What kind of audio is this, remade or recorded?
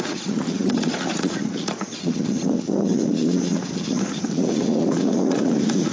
remade